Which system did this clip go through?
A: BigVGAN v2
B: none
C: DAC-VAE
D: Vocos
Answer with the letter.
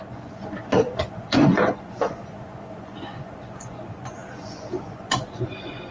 D